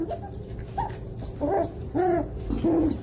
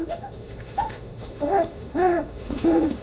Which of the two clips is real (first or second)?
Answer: first